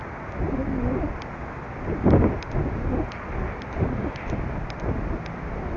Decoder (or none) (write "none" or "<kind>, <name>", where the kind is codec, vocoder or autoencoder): none